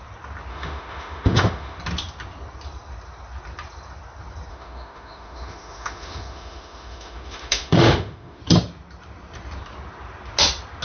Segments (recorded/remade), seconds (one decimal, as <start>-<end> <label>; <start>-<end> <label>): 0.0-0.5 recorded; 0.5-1.8 remade; 1.8-4.5 recorded; 4.5-8.4 remade; 8.4-10.8 recorded